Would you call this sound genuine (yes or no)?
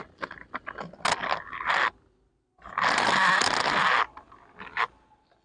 yes